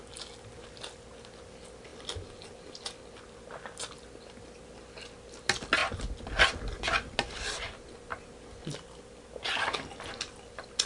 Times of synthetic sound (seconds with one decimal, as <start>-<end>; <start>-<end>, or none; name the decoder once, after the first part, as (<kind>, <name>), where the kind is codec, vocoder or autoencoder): none